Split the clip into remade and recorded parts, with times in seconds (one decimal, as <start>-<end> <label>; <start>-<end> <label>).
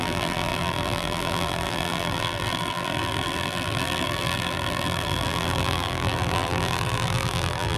0.0-7.8 remade